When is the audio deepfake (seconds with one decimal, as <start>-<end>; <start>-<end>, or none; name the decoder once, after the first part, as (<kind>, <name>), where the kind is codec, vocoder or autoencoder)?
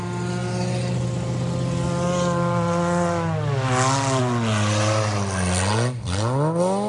none